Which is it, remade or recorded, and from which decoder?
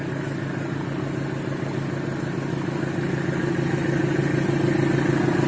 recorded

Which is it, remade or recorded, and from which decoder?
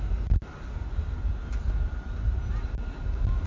recorded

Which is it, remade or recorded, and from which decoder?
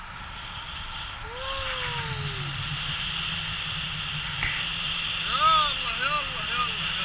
recorded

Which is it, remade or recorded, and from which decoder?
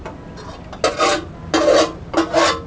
recorded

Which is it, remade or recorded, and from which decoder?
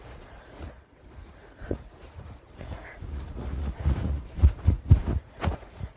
remade, vocoder, Vocos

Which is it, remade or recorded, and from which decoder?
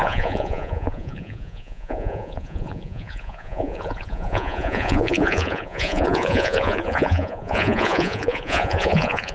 remade, vocoder, Vocos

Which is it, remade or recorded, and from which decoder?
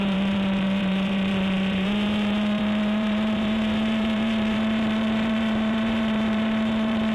remade, vocoder, BigVGAN v2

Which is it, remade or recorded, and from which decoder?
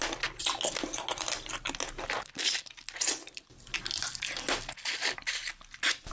recorded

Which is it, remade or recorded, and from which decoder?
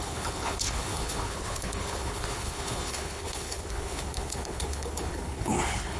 remade, codec, HILCodec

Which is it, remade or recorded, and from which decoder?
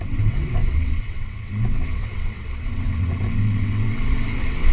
remade, vocoder, WaveNeXt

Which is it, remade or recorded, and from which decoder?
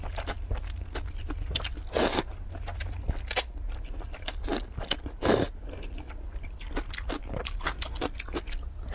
recorded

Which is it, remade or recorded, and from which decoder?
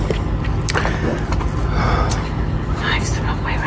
recorded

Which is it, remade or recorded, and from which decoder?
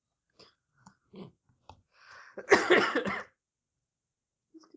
recorded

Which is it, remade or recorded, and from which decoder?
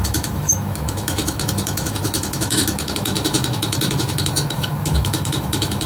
remade, autoencoder, DAC-VAE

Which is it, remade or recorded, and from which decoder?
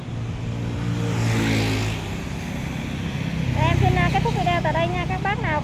recorded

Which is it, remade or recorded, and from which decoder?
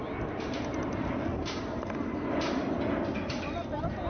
recorded